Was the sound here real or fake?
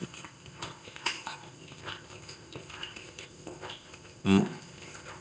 fake